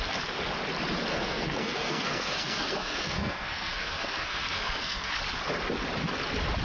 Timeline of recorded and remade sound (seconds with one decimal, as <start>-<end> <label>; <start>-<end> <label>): 0.0-1.1 recorded; 1.1-5.1 remade; 5.1-6.6 recorded